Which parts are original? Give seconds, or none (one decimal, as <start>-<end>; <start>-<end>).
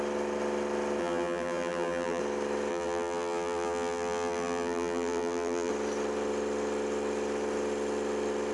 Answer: 0.0-1.0; 2.2-2.7; 5.7-8.5